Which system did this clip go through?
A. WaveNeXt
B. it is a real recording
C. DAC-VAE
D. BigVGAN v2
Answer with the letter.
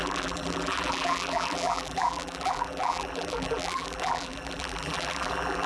D